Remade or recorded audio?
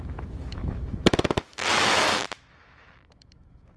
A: remade